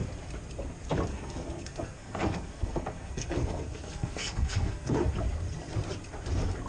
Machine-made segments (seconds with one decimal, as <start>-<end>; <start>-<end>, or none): 1.1-5.1